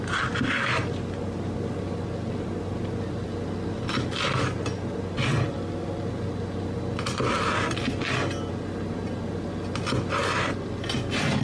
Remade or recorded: recorded